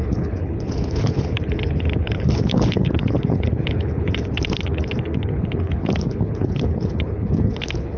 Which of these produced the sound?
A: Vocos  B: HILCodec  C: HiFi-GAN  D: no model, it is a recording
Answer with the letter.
B